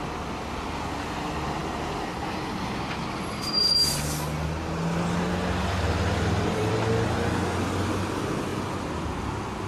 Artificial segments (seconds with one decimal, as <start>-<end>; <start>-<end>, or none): none